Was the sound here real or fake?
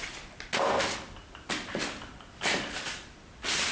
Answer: real